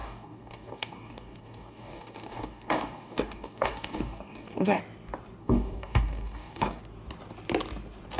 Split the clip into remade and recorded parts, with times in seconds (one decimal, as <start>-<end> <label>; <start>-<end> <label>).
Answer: 0.0-4.8 remade; 4.8-5.4 recorded; 5.4-6.8 remade; 6.8-8.2 recorded